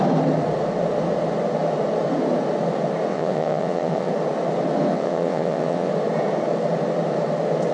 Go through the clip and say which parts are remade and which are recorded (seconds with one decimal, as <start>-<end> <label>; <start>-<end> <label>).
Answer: 0.0-3.1 recorded; 3.1-4.1 remade; 4.1-4.9 recorded; 4.9-5.9 remade; 5.9-7.7 recorded